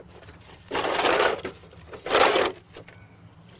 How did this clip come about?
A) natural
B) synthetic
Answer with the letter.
A